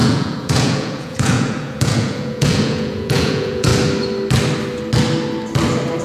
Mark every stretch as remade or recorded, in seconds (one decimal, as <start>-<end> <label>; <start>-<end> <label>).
0.0-3.7 remade; 3.7-6.0 recorded